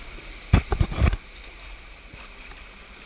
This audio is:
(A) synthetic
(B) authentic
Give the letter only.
B